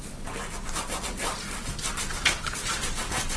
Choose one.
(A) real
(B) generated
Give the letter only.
A